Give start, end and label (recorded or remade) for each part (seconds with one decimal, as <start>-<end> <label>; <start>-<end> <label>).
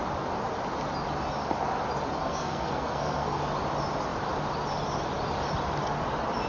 0.0-2.2 recorded; 2.2-3.4 remade; 3.4-6.5 recorded